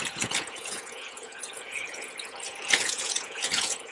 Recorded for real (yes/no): no